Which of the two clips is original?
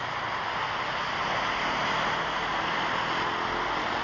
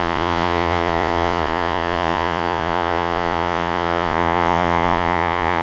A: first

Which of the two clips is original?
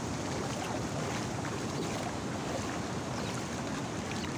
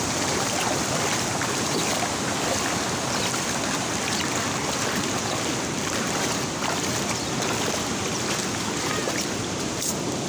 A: first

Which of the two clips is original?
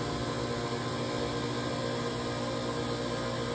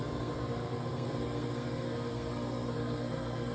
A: first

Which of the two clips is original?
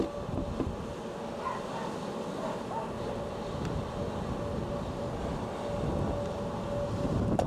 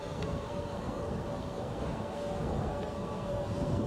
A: first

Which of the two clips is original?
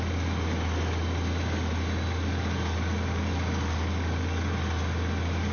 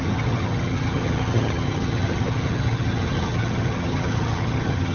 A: first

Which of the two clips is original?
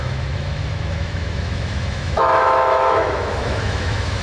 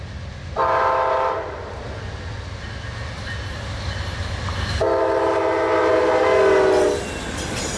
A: second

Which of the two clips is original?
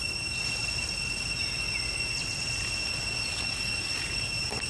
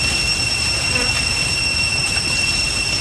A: first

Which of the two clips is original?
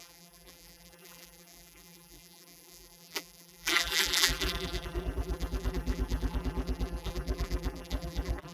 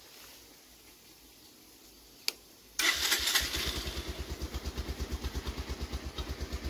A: second